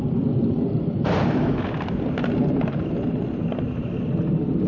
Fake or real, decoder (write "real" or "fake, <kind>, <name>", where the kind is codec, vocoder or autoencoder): fake, vocoder, BigVGAN v2